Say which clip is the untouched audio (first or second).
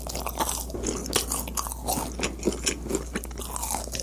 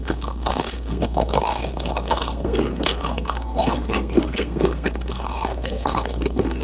first